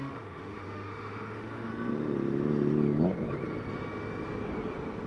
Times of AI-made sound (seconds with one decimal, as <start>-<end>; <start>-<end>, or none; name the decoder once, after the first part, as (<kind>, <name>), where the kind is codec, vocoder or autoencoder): 0.0-1.7 (autoencoder, DAC-VAE)